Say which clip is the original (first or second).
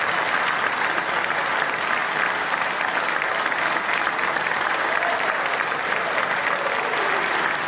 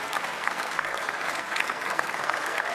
first